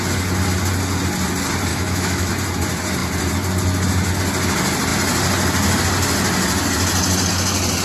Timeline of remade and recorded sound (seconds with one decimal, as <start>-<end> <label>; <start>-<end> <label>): 0.0-1.7 recorded; 1.7-2.3 remade; 2.3-7.8 recorded